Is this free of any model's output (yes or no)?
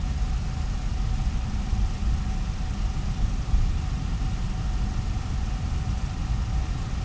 yes